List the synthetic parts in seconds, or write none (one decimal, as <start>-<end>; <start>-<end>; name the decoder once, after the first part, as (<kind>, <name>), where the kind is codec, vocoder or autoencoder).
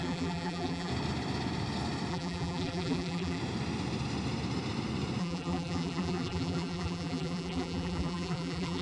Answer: 0.0-0.9 (vocoder, BigVGAN v2); 2.1-3.4; 5.2-8.8